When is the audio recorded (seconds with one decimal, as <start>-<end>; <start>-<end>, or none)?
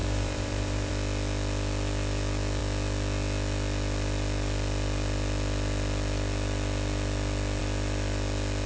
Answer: 0.9-8.7